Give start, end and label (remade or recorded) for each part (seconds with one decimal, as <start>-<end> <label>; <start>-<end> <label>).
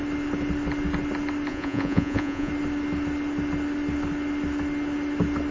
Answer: 0.0-1.5 recorded; 1.5-2.5 remade; 2.5-5.5 recorded